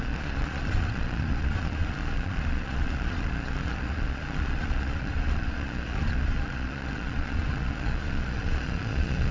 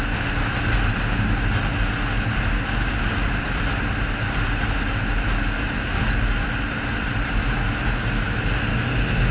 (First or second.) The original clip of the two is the second